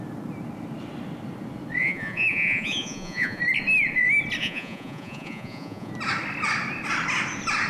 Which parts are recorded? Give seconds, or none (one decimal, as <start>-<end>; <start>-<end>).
0.0-1.8; 3.4-4.4; 5.9-7.7